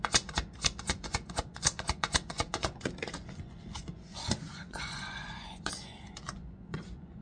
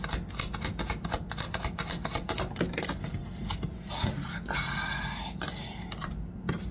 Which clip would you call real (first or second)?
second